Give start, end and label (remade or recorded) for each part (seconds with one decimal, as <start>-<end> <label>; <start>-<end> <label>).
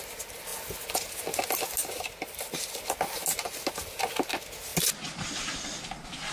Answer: 0.0-1.8 recorded; 1.8-2.8 remade; 2.8-6.3 recorded